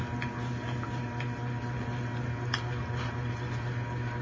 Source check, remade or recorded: recorded